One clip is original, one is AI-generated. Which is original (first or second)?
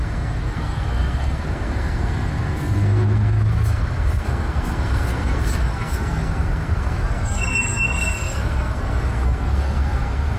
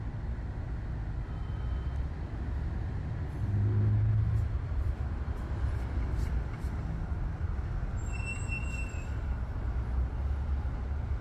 second